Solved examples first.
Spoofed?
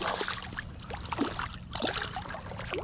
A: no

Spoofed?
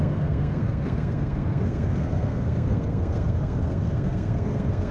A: yes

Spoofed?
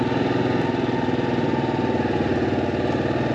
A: no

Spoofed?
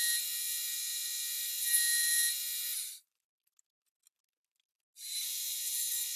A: no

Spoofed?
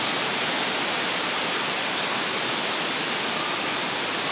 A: no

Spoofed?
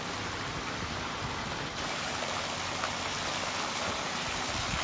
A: no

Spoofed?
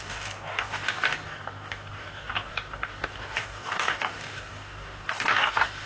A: yes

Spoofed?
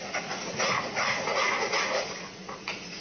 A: yes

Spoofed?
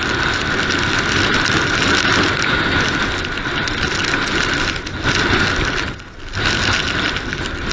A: no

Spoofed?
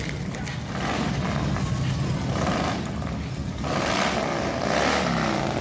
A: no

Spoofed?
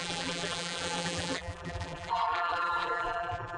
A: yes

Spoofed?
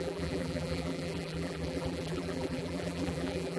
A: yes